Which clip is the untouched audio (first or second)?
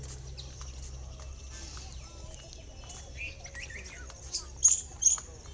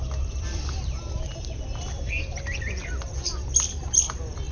first